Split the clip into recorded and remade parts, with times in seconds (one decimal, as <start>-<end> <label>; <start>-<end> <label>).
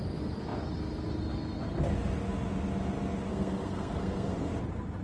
0.0-3.3 recorded; 3.3-4.5 remade; 4.5-5.0 recorded